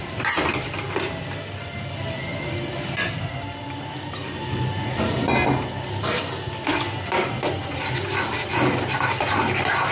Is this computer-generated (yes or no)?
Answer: no